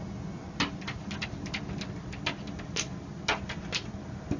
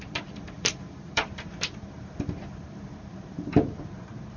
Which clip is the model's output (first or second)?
second